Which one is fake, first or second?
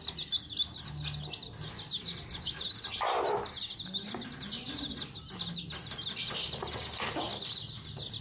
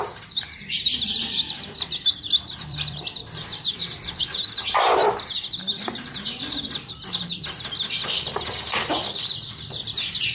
second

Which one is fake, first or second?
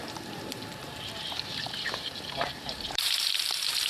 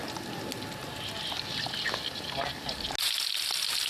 first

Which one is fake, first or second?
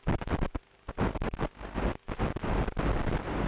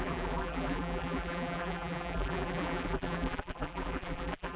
second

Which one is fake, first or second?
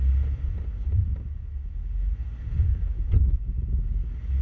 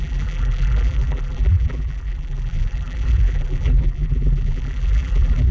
second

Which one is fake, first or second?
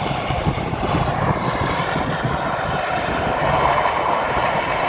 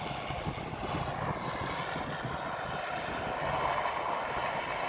first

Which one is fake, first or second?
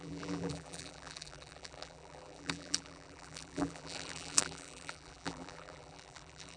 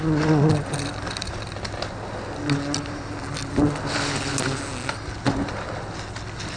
first